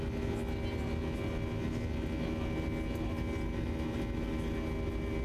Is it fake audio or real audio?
real